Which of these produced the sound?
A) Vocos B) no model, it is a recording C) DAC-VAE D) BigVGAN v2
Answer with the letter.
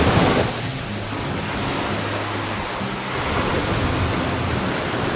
B